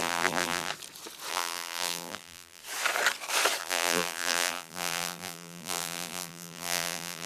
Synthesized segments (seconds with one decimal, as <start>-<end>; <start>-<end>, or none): 0.0-0.7; 1.3-2.6; 3.6-7.3